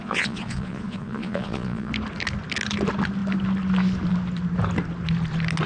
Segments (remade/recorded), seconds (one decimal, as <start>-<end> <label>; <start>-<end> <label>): 0.0-1.9 remade; 1.9-5.7 recorded